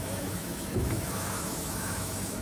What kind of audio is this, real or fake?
fake